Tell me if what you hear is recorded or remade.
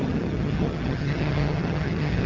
remade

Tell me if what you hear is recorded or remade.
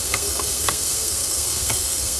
remade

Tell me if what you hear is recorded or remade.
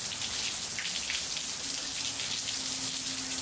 recorded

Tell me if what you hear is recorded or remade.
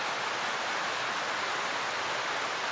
recorded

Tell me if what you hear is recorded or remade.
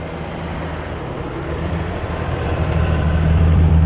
remade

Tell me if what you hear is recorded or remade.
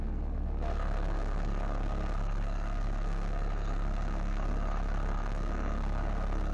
remade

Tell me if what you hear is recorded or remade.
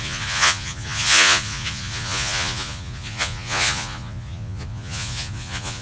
remade